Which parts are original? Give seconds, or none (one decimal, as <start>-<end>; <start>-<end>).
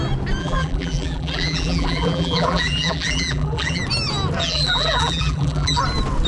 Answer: 0.0-0.4; 3.8-4.4; 5.8-6.3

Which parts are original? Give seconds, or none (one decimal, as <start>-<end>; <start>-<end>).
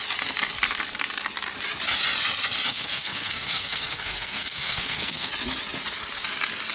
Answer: 0.0-2.7; 5.3-6.7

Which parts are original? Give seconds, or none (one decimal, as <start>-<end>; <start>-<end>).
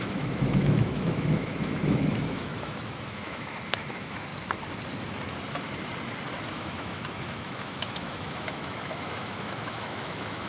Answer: 4.3-6.5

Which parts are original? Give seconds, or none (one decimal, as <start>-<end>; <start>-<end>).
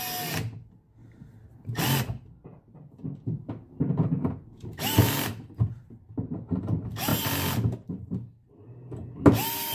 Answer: 0.0-1.0; 1.8-2.5; 3.9-9.7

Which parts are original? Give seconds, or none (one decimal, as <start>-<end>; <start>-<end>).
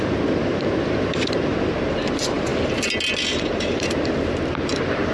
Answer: 2.5-3.5